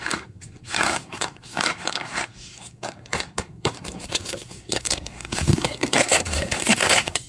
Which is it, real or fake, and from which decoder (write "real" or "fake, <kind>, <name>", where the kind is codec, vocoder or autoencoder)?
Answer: fake, codec, SNAC